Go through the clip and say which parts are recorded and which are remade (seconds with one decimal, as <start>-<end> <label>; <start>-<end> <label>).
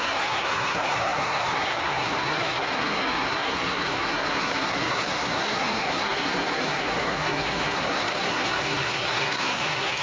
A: 0.0-10.0 remade